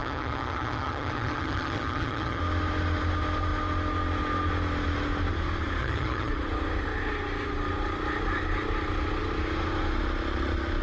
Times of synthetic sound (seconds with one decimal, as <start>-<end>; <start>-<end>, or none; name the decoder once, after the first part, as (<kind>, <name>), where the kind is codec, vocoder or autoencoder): 0.0-2.4 (vocoder, HiFi-GAN); 5.8-6.3